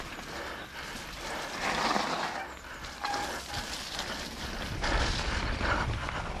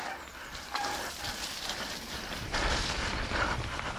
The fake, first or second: second